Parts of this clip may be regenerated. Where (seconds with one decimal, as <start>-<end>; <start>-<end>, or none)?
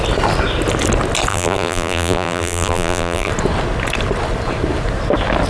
1.3-3.3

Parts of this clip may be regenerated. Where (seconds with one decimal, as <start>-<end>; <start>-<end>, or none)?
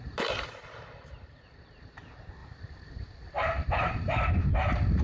2.4-5.0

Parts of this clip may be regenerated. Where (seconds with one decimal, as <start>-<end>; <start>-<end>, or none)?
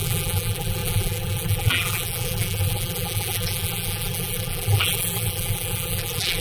0.0-6.4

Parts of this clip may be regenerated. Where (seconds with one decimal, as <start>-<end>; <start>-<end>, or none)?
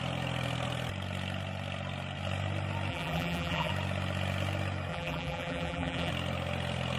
2.9-3.7; 4.9-6.1